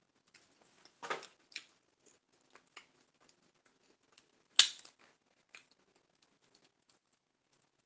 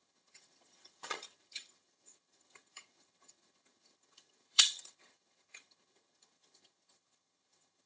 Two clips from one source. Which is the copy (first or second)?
second